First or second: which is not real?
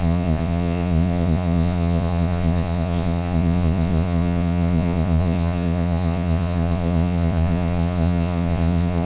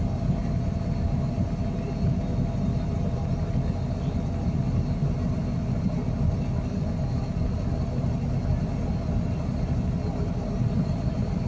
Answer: first